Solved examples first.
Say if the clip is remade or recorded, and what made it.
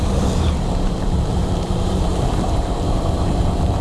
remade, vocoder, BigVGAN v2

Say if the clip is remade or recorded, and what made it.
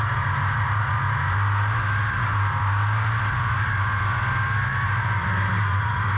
recorded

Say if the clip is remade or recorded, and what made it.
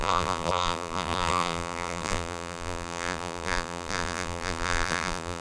remade, vocoder, BigVGAN v2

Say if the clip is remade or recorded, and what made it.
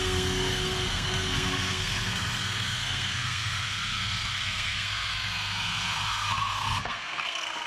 remade, codec, SNAC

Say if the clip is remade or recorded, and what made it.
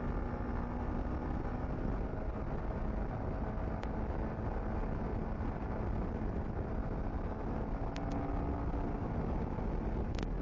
recorded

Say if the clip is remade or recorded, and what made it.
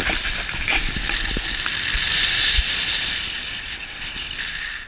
recorded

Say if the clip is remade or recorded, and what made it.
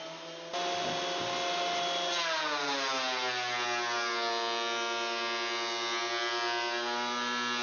recorded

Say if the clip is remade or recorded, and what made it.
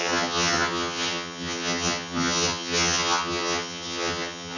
remade, vocoder, HiFi-GAN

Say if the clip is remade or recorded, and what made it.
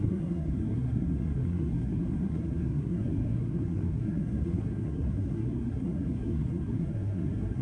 remade, codec, SNAC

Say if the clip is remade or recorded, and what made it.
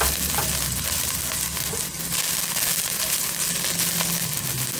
recorded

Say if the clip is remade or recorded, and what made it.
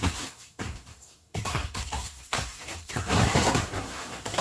remade, codec, SNAC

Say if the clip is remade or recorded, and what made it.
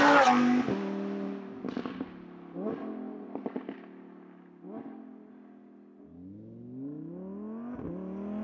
recorded